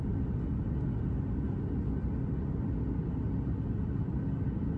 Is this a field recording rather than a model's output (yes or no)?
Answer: yes